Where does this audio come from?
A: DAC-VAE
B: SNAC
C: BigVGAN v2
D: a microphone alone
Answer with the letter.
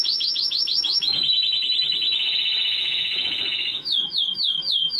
A